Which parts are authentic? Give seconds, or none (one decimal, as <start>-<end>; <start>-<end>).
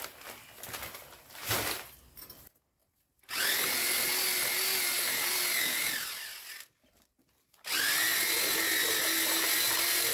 0.0-10.1